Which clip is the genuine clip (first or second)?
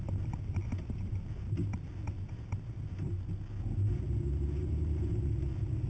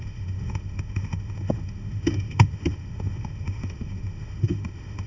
first